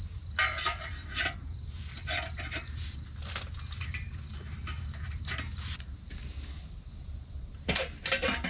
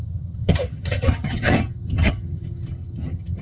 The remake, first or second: second